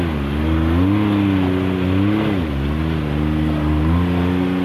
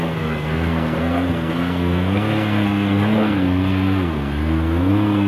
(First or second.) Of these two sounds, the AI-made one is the second